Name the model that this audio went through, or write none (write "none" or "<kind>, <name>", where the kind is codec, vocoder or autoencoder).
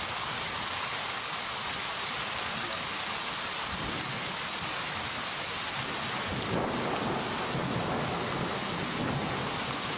none